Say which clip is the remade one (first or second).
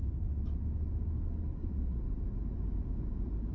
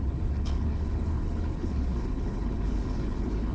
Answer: second